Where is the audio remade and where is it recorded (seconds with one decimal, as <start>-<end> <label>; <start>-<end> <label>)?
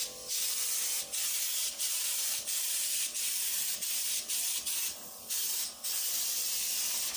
0.0-1.6 recorded; 1.6-3.0 remade; 3.0-7.2 recorded